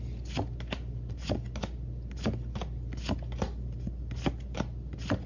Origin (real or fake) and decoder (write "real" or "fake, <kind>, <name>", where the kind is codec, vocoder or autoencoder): real